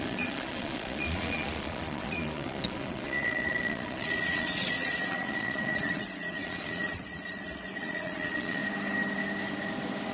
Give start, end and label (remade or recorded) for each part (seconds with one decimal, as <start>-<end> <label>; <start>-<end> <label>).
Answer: 0.0-8.6 remade; 8.6-10.1 recorded